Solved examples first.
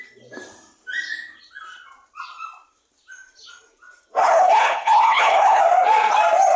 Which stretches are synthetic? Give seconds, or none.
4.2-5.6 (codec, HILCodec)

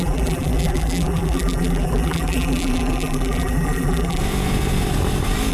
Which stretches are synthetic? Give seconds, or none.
0.0-4.2 (vocoder, BigVGAN v2)